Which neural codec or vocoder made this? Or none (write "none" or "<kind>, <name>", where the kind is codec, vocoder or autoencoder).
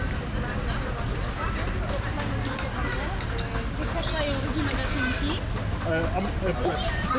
none